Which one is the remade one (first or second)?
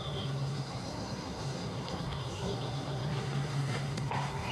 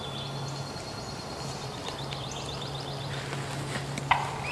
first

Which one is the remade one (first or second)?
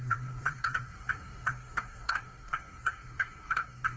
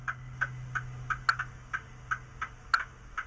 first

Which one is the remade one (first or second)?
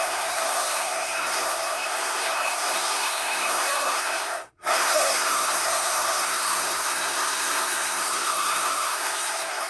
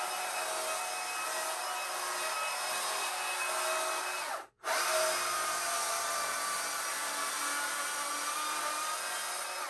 first